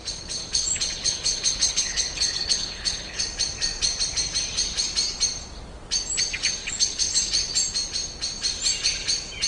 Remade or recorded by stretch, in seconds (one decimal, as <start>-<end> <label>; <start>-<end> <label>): 0.0-3.2 remade; 3.2-6.6 recorded; 6.6-7.3 remade; 7.3-9.5 recorded